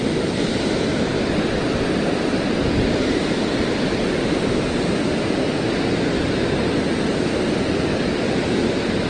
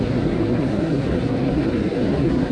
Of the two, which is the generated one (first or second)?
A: second